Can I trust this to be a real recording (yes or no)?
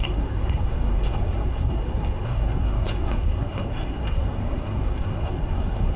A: no